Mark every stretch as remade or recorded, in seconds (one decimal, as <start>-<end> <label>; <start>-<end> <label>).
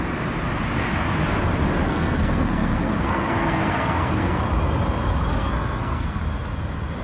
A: 0.0-1.8 recorded; 1.8-4.4 remade; 4.4-5.3 recorded; 5.3-6.2 remade; 6.2-7.0 recorded